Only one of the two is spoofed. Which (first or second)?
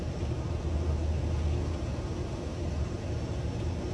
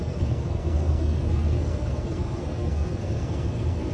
second